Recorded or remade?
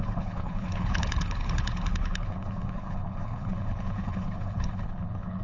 remade